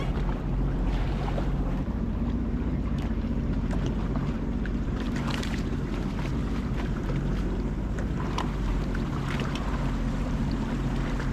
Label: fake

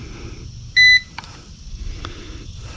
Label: real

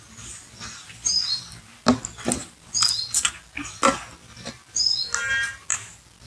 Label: real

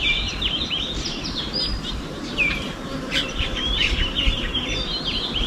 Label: fake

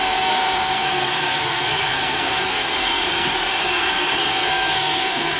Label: fake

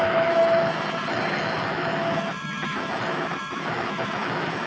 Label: fake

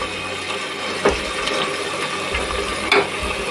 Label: real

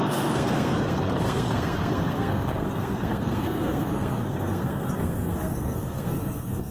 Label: fake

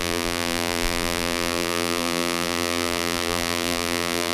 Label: fake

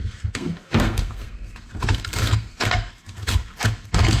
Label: fake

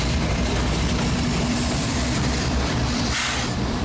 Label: fake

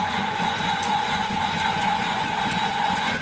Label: fake